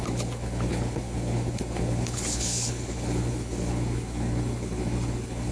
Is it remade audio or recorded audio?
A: remade